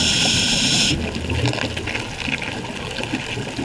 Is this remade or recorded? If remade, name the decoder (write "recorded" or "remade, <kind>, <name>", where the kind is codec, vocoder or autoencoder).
recorded